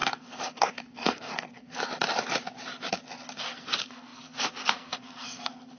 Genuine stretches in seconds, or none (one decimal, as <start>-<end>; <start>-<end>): 1.8-3.4